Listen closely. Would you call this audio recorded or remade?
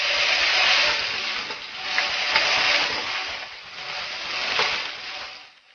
recorded